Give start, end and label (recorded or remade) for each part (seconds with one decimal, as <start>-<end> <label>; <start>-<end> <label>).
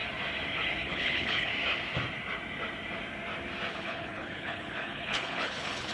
0.0-0.8 recorded; 0.8-1.5 remade; 1.5-3.7 recorded; 3.7-5.9 remade